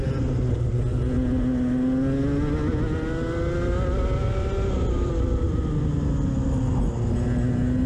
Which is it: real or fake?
real